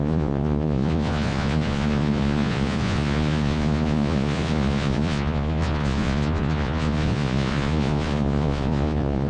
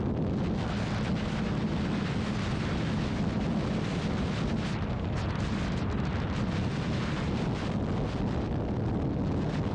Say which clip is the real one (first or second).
second